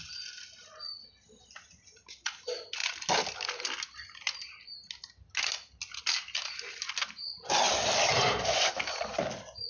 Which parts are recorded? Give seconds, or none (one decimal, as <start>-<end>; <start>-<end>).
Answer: 0.0-9.7